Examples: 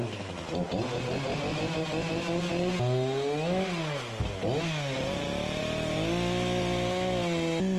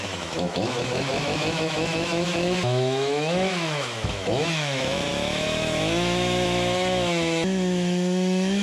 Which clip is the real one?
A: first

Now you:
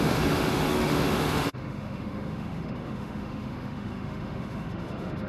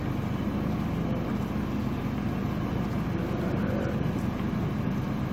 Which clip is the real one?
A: second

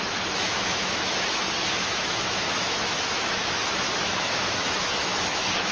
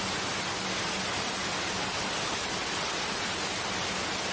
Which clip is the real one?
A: second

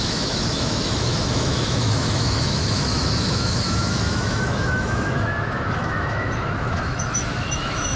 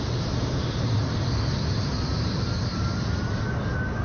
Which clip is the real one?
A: second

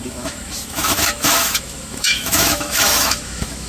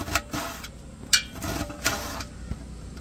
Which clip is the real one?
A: second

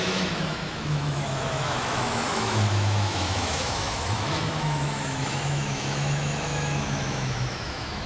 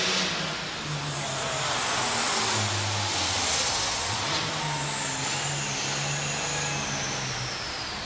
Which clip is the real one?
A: second